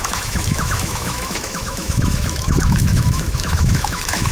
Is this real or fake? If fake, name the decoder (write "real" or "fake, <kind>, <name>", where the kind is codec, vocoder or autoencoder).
fake, autoencoder, DAC-VAE